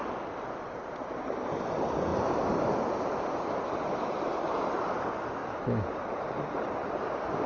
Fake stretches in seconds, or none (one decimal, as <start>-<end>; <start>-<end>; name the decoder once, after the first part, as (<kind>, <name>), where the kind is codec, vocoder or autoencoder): 5.4-6.0 (autoencoder, DAC-VAE)